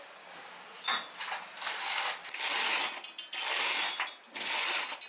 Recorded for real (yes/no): yes